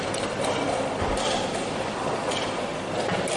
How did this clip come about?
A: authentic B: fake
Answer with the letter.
A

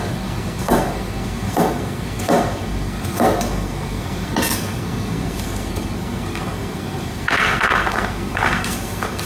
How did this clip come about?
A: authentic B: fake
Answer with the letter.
B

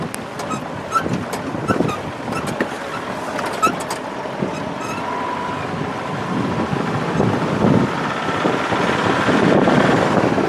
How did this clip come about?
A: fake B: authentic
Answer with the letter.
B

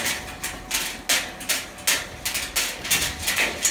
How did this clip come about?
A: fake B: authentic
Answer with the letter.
B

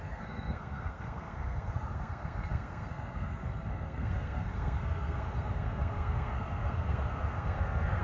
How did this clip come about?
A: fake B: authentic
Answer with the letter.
A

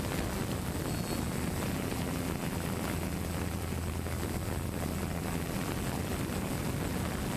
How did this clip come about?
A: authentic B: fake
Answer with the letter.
A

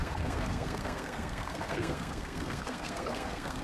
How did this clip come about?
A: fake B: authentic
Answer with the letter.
A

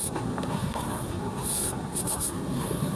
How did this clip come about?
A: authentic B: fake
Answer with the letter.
B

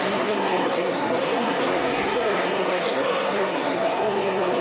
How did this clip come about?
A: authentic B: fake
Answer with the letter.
B